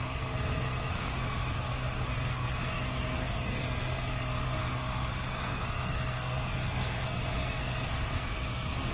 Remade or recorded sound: remade